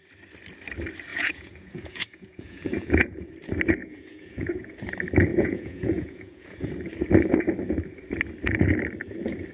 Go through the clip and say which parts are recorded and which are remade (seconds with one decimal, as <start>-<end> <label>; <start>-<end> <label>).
0.0-1.1 recorded; 1.1-3.3 remade; 3.3-3.8 recorded; 3.8-4.7 remade; 4.7-5.3 recorded; 5.3-6.7 remade; 6.7-9.5 recorded